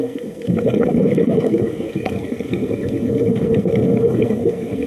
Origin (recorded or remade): remade